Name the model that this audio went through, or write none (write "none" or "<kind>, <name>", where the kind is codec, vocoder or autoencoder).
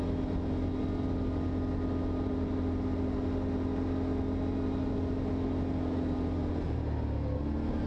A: none